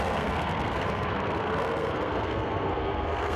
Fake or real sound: fake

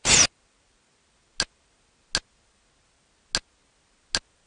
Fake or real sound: real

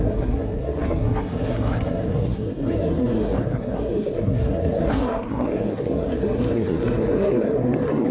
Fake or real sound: fake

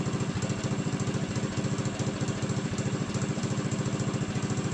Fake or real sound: real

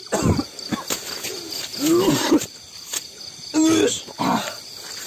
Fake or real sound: real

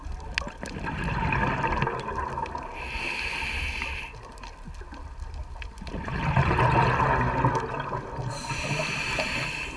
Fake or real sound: real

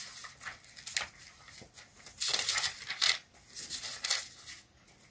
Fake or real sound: real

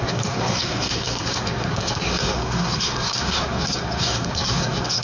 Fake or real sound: fake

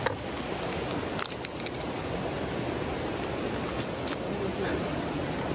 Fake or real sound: real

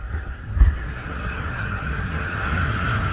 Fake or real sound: fake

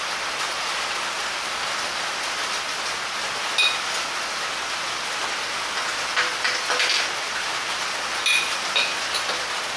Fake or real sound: real